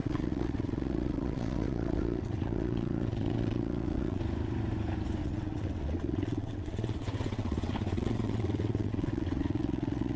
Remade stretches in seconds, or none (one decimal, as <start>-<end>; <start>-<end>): 0.0-4.2; 5.2-10.2